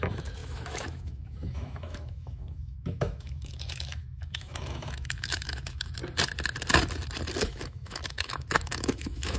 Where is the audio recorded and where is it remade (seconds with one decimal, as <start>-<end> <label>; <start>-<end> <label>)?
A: 0.0-6.0 remade; 6.0-7.4 recorded; 7.4-9.4 remade